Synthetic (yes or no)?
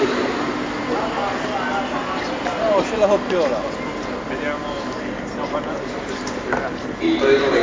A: no